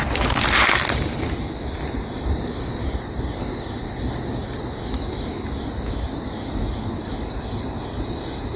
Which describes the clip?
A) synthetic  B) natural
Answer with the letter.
B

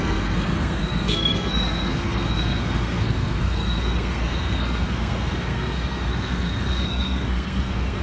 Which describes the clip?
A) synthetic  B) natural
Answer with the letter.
A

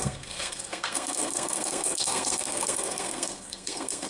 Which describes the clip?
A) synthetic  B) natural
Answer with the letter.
A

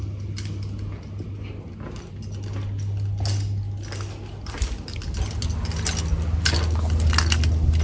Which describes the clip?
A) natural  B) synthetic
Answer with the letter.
A